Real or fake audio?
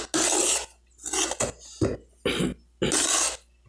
real